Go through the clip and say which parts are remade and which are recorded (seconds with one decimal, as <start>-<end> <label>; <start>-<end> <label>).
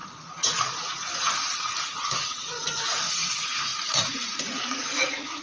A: 0.0-5.4 remade